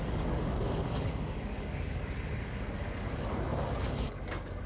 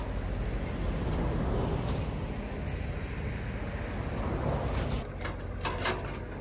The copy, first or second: first